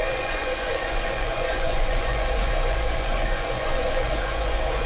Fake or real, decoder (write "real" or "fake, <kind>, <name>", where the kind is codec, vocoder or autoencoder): fake, vocoder, Vocos